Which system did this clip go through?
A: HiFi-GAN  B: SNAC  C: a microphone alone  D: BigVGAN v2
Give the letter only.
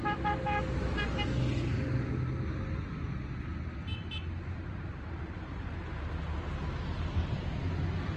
C